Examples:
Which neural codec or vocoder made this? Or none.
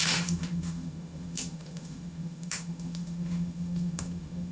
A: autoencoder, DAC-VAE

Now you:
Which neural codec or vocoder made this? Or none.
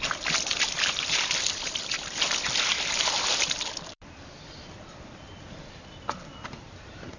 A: vocoder, BigVGAN v2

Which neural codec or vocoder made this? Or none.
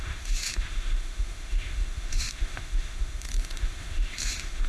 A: autoencoder, DAC-VAE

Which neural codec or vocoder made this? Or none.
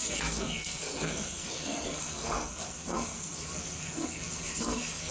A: codec, SNAC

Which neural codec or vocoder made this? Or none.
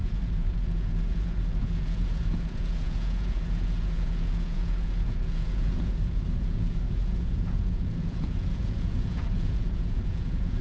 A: vocoder, Vocos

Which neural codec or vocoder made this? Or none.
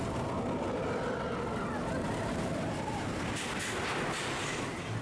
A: none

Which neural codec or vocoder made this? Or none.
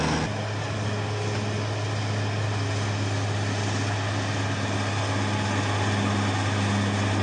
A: none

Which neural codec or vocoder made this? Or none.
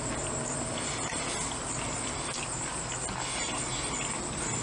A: none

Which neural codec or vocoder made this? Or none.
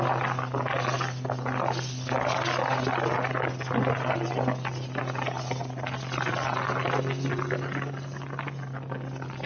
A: none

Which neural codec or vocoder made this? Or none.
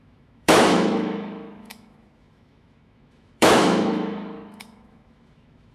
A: autoencoder, DAC-VAE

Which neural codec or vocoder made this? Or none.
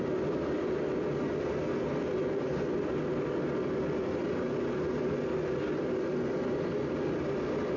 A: none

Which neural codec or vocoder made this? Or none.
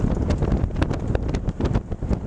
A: none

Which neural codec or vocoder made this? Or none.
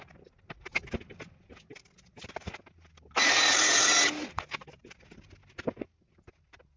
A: none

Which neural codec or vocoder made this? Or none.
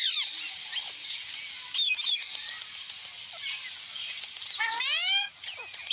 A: none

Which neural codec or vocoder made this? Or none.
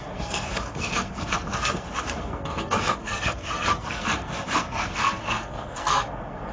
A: codec, SNAC